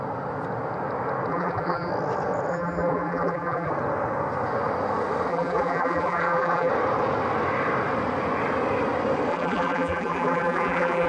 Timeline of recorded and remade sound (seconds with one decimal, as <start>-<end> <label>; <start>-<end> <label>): 0.0-1.3 recorded; 1.3-1.9 remade; 1.9-2.5 recorded; 2.5-3.7 remade; 3.7-5.3 recorded; 5.3-6.7 remade; 6.7-9.3 recorded; 9.3-11.1 remade